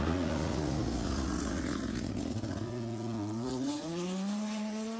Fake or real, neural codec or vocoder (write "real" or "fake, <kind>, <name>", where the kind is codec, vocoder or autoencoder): fake, vocoder, Vocos